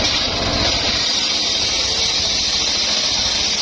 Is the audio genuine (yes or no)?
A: yes